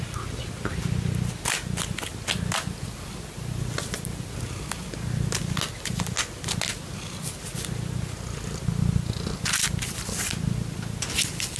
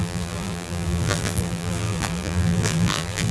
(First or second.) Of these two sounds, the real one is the first